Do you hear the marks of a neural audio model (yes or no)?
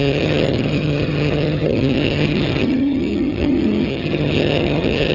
yes